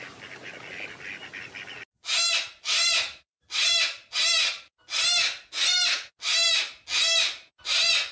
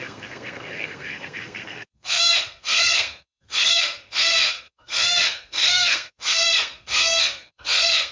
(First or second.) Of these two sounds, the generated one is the second